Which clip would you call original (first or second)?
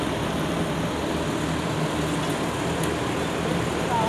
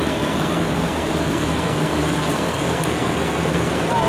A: first